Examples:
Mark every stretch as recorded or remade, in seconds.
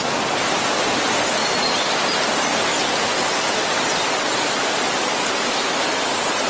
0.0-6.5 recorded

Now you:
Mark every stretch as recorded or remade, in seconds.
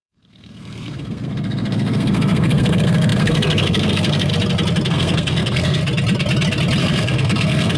0.0-4.3 remade; 4.3-4.9 recorded; 4.9-5.8 remade; 5.8-6.8 recorded; 6.8-7.8 remade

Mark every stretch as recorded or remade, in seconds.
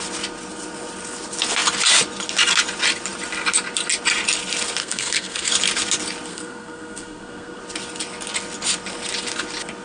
0.0-4.8 recorded; 4.8-5.5 remade; 5.5-6.3 recorded; 6.3-7.6 remade; 7.6-9.8 recorded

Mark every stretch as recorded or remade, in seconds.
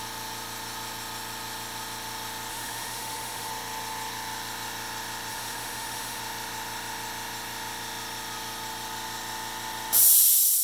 0.0-2.5 recorded; 2.5-3.5 remade; 3.5-5.3 recorded; 5.3-6.2 remade; 6.2-10.6 recorded